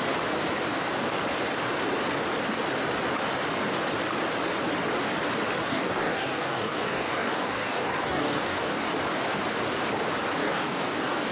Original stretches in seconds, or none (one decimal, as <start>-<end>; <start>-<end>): 0.0-5.7; 8.9-10.4